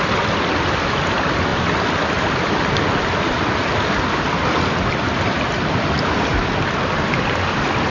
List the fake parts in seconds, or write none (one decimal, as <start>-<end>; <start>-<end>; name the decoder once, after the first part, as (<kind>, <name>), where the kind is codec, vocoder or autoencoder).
none

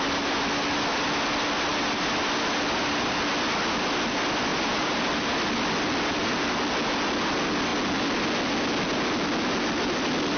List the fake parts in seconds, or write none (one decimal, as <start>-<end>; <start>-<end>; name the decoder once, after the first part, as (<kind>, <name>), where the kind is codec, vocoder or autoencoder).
4.5-5.1 (vocoder, BigVGAN v2)

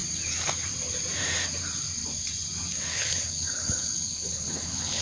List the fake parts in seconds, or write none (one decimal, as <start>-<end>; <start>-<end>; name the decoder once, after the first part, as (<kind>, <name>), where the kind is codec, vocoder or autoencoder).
2.9-5.0 (codec, HILCodec)

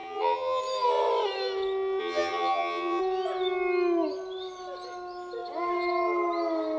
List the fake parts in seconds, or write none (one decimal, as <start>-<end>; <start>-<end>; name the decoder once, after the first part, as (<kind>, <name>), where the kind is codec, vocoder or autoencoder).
0.0-0.6 (vocoder, HiFi-GAN); 2.0-3.0

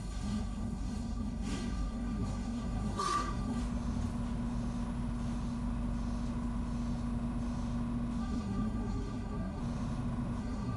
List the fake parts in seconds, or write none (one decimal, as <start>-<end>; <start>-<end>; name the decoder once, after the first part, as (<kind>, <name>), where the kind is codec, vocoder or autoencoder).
0.0-3.6 (codec, SNAC); 8.2-9.6; 10.4-10.8

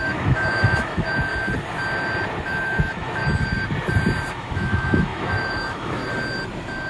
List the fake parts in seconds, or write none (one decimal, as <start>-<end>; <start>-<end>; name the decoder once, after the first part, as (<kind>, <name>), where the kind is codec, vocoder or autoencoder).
0.0-1.3 (autoencoder, DAC-VAE); 2.4-3.2; 4.3-6.0